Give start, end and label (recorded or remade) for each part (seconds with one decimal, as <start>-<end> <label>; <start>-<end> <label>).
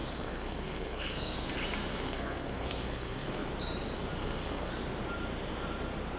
0.0-1.5 remade; 1.5-1.9 recorded; 1.9-3.5 remade; 3.5-4.2 recorded; 4.2-4.7 remade; 4.7-6.2 recorded